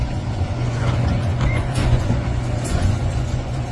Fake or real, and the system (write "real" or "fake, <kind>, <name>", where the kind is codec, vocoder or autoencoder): fake, vocoder, Vocos